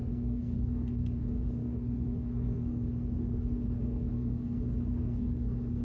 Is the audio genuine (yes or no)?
no